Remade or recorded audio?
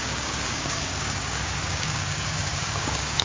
remade